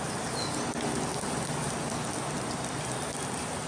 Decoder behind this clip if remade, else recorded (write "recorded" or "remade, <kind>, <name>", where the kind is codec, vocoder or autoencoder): recorded